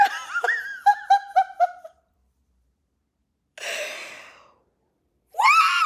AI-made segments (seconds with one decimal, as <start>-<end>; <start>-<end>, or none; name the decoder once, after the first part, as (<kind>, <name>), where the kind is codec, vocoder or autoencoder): 0.0-0.9 (vocoder, BigVGAN v2); 1.6-2.2; 4.9-5.9